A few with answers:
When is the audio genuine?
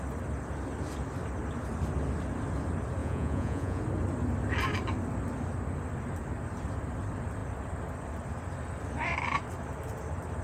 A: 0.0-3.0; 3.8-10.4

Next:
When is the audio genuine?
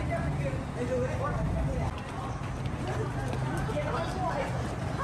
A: 0.0-5.0